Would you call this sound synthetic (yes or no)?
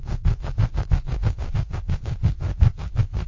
yes